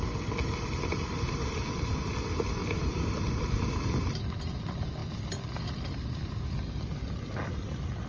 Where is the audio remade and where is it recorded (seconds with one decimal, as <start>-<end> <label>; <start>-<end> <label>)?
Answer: 0.0-8.1 recorded